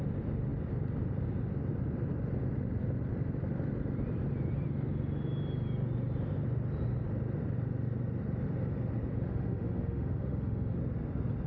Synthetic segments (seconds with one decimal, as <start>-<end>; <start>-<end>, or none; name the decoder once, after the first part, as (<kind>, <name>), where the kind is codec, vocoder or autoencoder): 9.1-10.8 (autoencoder, DAC-VAE)